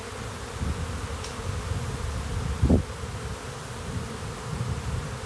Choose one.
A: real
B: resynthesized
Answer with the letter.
A